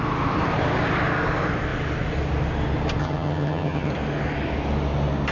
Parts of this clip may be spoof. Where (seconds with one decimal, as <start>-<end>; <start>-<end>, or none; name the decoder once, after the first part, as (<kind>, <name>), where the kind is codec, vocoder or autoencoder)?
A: 3.0-3.9 (vocoder, HiFi-GAN)